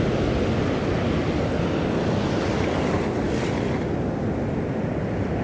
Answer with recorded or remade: recorded